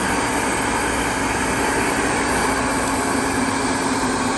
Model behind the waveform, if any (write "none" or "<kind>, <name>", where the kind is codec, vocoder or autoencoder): none